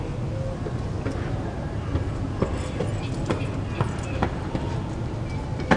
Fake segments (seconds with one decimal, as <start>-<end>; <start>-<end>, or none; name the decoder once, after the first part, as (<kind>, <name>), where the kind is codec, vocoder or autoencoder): none